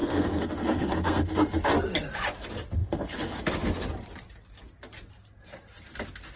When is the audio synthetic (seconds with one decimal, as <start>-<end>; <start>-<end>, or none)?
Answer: 0.0-1.7; 2.8-3.4